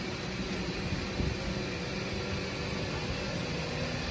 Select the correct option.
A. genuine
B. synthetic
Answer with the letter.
A